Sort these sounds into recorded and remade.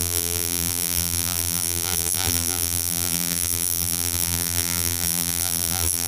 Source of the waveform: remade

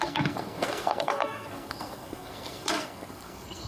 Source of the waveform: remade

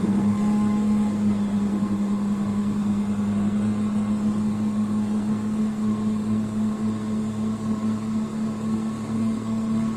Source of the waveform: remade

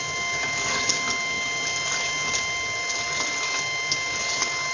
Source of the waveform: recorded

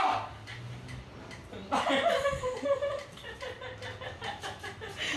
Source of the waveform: recorded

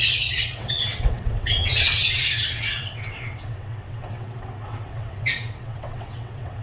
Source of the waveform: remade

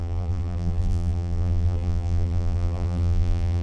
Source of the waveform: remade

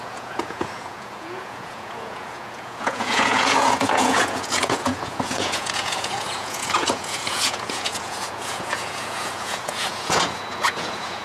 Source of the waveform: remade